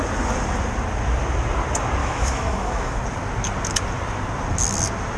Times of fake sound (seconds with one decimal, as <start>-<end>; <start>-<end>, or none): 2.0-3.0